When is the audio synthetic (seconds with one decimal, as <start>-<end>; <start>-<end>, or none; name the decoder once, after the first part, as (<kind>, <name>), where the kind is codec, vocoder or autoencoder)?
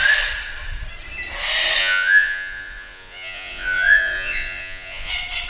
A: 1.8-5.1 (vocoder, Vocos)